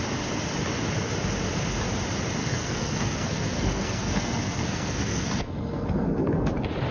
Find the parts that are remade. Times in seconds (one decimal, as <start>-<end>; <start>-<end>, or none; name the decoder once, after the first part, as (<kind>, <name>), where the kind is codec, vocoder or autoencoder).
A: 2.4-6.5 (codec, SNAC)

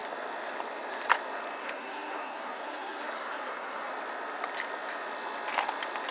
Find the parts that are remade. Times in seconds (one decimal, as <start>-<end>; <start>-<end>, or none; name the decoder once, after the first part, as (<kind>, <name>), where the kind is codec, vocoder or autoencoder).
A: 1.6-3.9 (codec, SNAC)

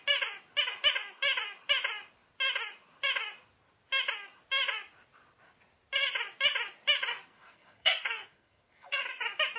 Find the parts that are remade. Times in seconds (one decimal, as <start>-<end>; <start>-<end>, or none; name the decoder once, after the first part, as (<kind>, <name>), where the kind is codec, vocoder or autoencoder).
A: 7.1-9.0 (codec, SNAC)

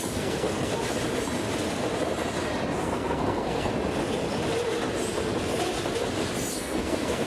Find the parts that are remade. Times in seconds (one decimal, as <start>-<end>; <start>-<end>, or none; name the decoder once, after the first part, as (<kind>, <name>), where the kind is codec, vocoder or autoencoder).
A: 0.0-0.7 (codec, SNAC); 2.8-3.7; 6.5-7.3

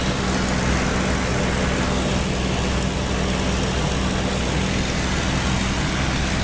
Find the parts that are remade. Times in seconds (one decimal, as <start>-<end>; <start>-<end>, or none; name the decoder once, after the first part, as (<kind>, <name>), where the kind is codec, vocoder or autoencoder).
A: none

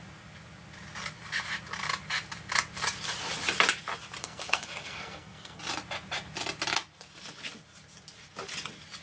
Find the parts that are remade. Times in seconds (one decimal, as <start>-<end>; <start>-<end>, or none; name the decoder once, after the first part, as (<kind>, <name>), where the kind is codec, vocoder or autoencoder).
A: 4.2-5.6 (codec, SNAC)

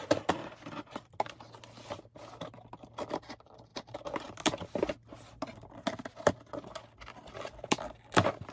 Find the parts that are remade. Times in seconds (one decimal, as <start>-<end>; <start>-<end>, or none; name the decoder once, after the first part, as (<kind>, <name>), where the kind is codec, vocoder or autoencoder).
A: none